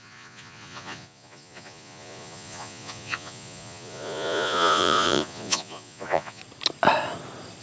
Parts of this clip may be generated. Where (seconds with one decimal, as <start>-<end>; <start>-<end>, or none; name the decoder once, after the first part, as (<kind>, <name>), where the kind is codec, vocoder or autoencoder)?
0.0-6.4 (vocoder, Vocos)